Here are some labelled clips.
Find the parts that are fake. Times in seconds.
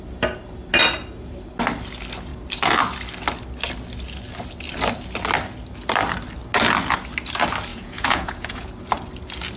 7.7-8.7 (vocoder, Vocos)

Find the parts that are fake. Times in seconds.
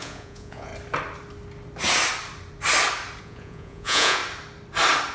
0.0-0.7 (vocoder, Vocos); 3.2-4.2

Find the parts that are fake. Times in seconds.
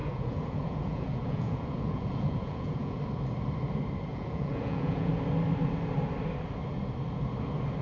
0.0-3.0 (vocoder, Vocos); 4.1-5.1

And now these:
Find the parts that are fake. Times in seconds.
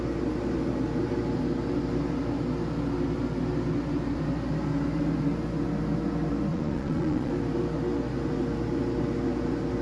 6.5-7.3 (vocoder, Vocos)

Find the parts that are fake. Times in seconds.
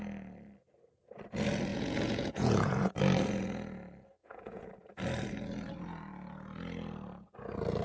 1.7-2.9 (vocoder, Vocos); 4.2-4.7